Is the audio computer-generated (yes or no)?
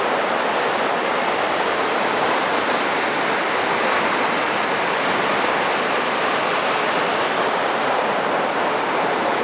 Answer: no